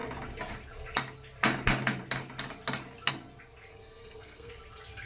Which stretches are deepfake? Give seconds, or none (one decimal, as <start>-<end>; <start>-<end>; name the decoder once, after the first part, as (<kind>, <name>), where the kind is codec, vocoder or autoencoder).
3.7-4.5 (codec, SNAC)